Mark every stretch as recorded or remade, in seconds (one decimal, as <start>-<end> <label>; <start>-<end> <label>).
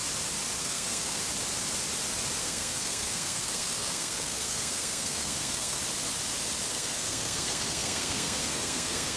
0.0-0.6 recorded; 0.6-1.2 remade; 1.2-2.4 recorded; 2.4-5.8 remade; 5.8-6.7 recorded; 6.7-9.2 remade